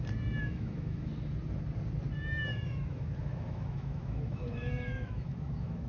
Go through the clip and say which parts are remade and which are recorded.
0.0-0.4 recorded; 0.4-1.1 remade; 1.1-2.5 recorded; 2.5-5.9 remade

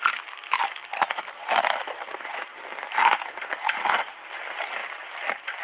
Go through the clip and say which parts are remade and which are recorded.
0.0-4.8 remade; 4.8-5.6 recorded

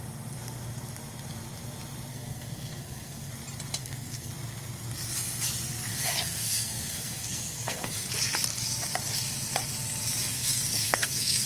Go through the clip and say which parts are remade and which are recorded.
0.0-2.1 recorded; 2.1-3.3 remade; 3.3-3.8 recorded; 3.8-4.3 remade; 4.3-5.9 recorded; 5.9-8.1 remade; 8.1-10.3 recorded; 10.3-11.5 remade

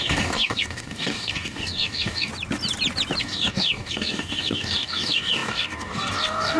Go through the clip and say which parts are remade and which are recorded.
0.0-2.3 remade; 2.3-3.2 recorded; 3.2-6.6 remade

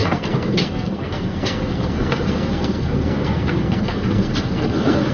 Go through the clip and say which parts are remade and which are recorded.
0.0-5.1 remade

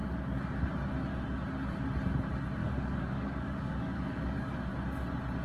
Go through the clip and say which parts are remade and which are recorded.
0.0-2.6 recorded; 2.6-4.7 remade; 4.7-5.4 recorded

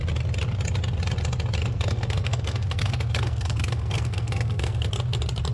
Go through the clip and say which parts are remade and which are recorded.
0.0-1.6 recorded; 1.6-4.9 remade; 4.9-5.5 recorded